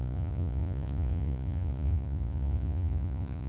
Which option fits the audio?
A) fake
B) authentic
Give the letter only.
A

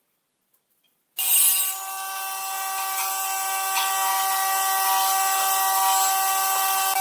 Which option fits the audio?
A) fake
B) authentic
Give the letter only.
B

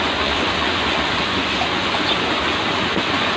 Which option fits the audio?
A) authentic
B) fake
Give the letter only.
B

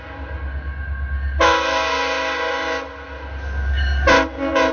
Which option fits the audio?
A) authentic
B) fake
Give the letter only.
A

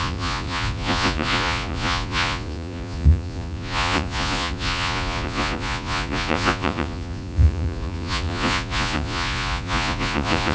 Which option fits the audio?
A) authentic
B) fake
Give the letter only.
B